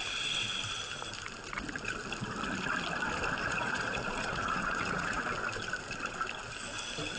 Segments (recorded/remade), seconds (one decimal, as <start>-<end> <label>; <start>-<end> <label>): 0.0-3.4 recorded; 3.4-5.2 remade; 5.2-7.2 recorded

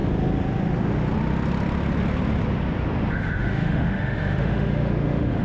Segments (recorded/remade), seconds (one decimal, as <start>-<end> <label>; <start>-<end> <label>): 0.0-3.1 recorded; 3.1-5.4 remade

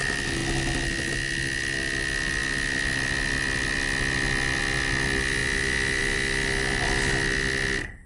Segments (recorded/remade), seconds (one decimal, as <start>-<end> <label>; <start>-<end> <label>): 0.0-8.1 recorded